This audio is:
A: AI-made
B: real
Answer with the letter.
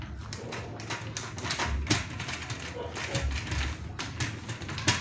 B